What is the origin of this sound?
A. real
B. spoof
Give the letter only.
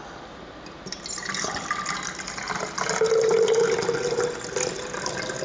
A